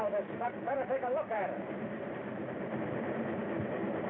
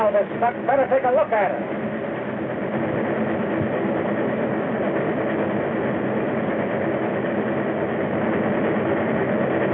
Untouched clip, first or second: second